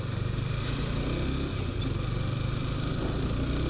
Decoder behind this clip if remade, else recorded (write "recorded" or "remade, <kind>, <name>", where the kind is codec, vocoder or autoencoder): recorded